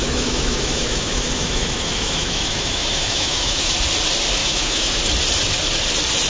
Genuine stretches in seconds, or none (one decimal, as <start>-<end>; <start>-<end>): 3.7-4.4; 5.0-6.3